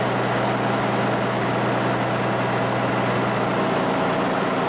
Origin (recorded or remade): recorded